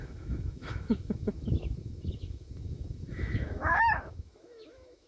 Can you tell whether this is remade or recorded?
remade